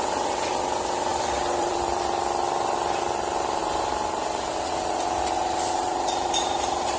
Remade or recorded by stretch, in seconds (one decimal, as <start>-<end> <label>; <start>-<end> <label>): 0.0-1.1 recorded; 1.1-3.0 remade; 3.0-3.6 recorded; 3.6-4.6 remade; 4.6-7.0 recorded